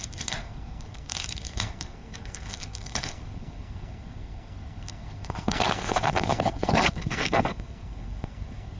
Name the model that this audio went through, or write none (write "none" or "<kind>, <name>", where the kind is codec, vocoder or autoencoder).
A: codec, SNAC